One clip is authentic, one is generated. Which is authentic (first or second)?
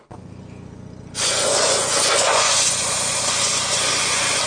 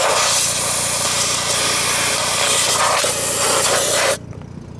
second